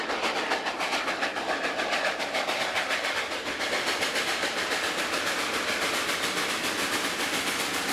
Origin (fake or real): real